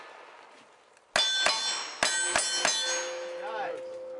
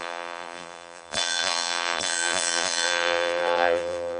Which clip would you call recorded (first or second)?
first